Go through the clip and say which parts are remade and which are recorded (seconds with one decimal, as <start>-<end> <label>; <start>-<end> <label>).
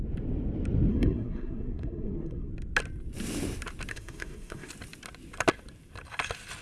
0.0-0.9 recorded; 0.9-2.5 remade; 2.5-3.9 recorded; 3.9-4.7 remade; 4.7-6.6 recorded